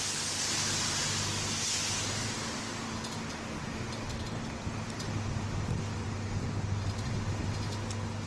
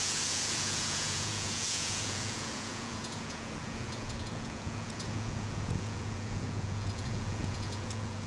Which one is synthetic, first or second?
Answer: second